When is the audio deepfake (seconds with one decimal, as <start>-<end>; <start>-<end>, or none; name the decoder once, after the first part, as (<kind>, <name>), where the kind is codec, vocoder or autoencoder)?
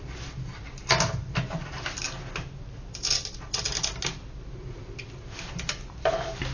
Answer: none